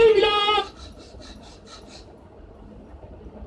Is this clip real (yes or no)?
yes